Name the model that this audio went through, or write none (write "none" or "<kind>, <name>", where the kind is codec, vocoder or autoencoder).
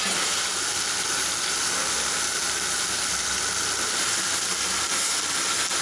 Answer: none